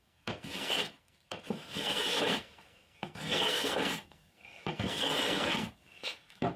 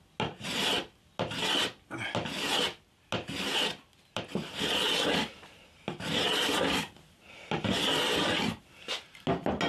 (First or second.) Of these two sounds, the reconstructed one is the first